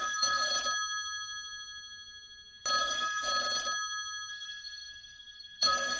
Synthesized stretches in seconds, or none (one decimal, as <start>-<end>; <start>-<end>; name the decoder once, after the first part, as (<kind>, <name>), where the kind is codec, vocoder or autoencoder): 0.0-0.5 (codec, SNAC); 2.8-3.3; 4.3-6.0